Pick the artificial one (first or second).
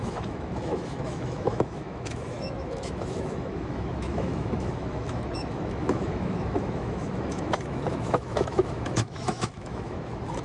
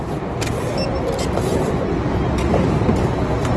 first